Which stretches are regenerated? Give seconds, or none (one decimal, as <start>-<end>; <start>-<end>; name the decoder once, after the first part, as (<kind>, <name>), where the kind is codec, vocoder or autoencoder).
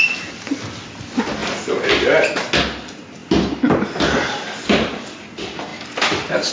1.4-1.9 (vocoder, BigVGAN v2)